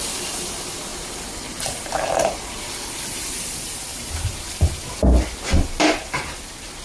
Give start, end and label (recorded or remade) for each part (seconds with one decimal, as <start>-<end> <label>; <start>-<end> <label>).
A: 0.0-3.9 recorded; 3.9-4.5 remade; 4.5-6.8 recorded